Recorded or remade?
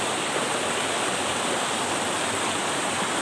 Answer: recorded